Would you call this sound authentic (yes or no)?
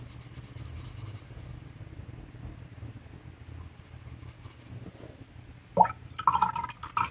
yes